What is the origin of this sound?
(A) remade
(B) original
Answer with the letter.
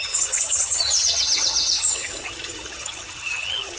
A